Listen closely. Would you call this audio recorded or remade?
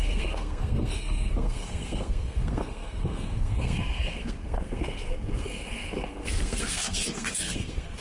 remade